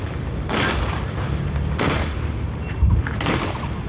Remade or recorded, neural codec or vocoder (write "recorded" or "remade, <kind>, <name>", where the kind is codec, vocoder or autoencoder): recorded